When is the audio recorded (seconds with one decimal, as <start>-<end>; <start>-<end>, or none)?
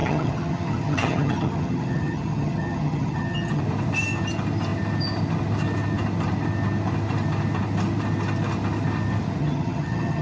3.6-9.4